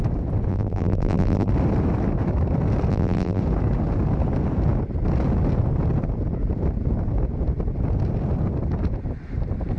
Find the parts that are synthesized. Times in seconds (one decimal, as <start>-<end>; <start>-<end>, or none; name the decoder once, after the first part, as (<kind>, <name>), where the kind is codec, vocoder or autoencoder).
0.5-1.5 (vocoder, BigVGAN v2); 2.9-3.4